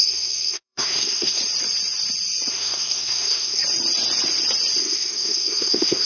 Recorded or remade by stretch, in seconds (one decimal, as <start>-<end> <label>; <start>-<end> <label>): 0.0-1.4 remade; 1.4-2.5 recorded; 2.5-3.6 remade; 3.6-4.8 recorded; 4.8-6.0 remade